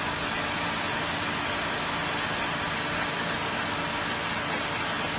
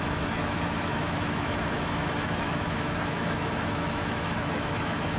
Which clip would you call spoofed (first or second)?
second